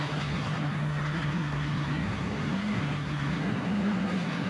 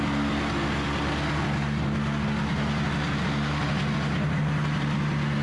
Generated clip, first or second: first